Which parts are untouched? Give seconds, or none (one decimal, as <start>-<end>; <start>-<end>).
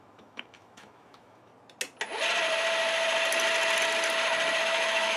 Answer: 1.5-4.6